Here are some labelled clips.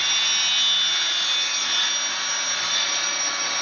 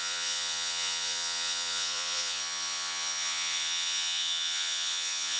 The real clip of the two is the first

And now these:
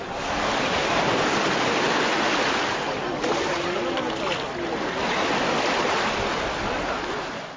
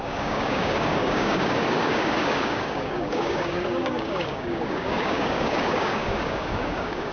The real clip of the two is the first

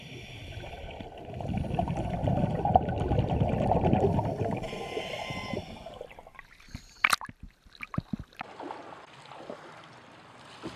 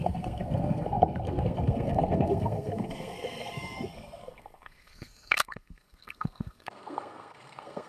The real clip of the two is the first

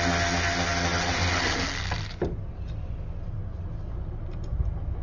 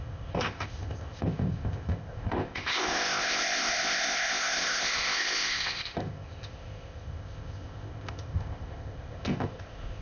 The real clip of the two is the first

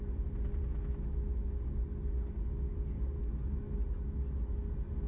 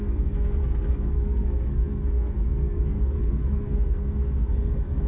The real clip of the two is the first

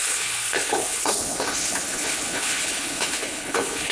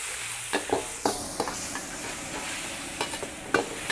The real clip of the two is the second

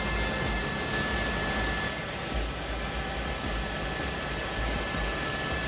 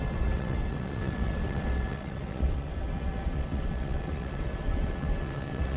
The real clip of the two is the first